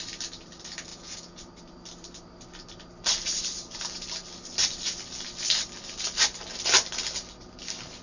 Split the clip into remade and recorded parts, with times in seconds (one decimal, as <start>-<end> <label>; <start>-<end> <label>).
0.0-0.9 recorded; 0.9-1.4 remade; 1.4-8.0 recorded